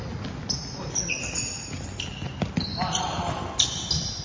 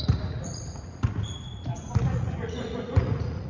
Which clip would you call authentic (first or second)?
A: first